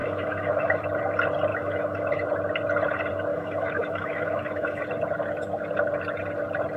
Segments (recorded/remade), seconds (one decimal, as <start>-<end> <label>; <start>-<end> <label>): 0.0-0.8 remade; 0.8-1.5 recorded; 1.5-2.1 remade; 2.1-3.3 recorded; 3.3-4.8 remade; 4.8-6.8 recorded